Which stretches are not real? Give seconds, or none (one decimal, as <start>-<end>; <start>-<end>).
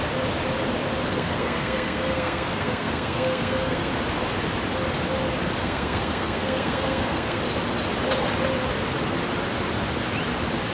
1.1-3.9; 5.6-7.4